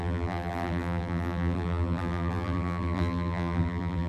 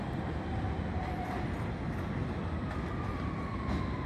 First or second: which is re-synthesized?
first